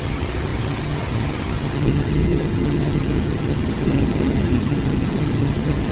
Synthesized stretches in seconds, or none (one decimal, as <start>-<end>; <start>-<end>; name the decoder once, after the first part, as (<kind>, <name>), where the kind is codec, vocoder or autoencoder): 0.0-5.9 (vocoder, HiFi-GAN)